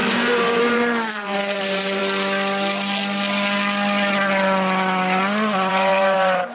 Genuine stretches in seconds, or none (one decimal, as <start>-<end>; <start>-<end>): 0.0-0.6; 2.0-5.7